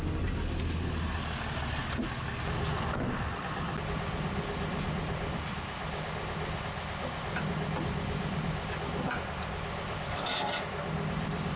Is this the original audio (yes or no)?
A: yes